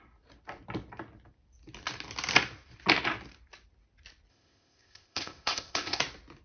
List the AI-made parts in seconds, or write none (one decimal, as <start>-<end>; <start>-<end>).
4.3-6.0